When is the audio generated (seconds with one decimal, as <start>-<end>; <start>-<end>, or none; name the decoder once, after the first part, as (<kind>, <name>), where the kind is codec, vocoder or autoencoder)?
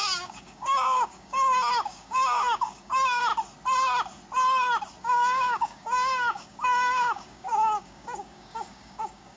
0.0-3.3 (codec, DAC); 5.0-9.4